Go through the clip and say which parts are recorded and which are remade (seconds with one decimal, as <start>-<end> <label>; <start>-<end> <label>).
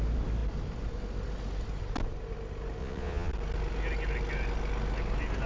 0.0-2.8 recorded; 2.8-3.3 remade; 3.3-5.5 recorded